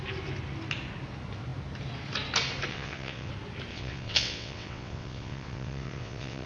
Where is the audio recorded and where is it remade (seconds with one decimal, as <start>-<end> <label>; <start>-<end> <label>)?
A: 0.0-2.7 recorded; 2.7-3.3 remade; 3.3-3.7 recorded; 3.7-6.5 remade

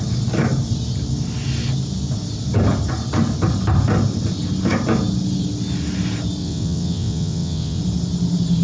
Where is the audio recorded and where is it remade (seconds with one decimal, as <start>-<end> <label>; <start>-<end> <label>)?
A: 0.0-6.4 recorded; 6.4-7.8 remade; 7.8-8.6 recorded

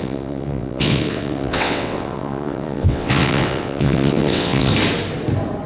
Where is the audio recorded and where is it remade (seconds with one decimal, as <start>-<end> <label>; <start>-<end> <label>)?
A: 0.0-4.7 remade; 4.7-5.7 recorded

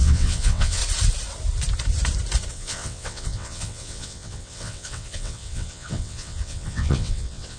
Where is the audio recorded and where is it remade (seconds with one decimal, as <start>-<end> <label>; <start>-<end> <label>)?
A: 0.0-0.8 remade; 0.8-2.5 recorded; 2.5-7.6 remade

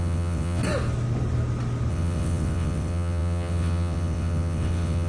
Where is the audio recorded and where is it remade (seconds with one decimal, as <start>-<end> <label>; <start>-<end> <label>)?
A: 0.0-0.6 remade; 0.6-1.9 recorded; 1.9-5.1 remade